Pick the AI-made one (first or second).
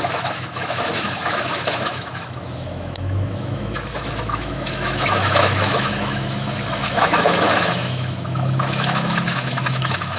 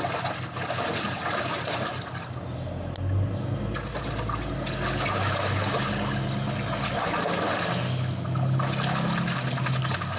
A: first